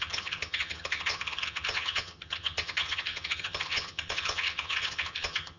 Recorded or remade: remade